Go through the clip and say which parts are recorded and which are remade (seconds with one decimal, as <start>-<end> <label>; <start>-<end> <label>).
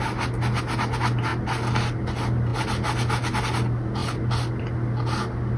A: 0.0-5.6 recorded